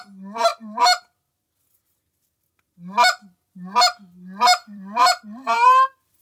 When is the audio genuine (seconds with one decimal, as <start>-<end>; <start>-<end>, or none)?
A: 0.0-4.6